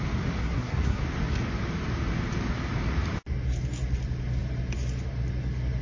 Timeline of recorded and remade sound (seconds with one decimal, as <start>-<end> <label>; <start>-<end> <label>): 0.0-0.4 recorded; 0.4-1.0 remade; 1.0-5.8 recorded